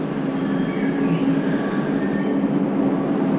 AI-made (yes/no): no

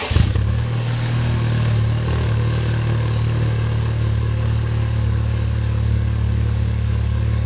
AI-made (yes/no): yes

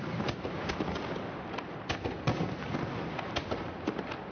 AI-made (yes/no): no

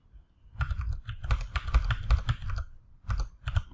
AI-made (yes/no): no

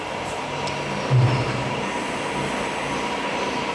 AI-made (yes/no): no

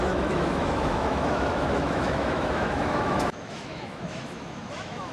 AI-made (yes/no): yes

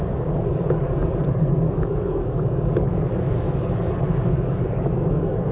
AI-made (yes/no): yes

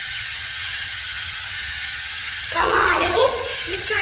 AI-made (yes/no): yes